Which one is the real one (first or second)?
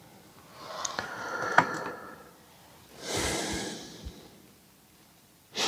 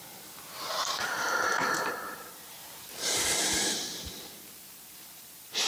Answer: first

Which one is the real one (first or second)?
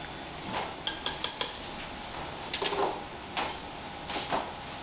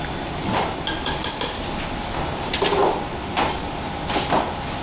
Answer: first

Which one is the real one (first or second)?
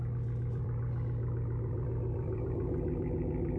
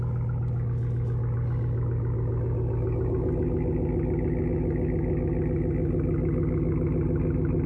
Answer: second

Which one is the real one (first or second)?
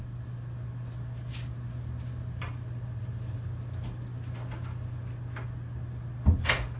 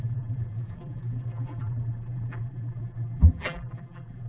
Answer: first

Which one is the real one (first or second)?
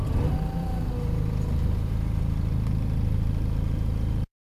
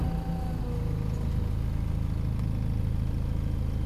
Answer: second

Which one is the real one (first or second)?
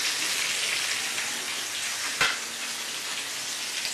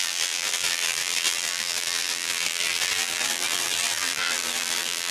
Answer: first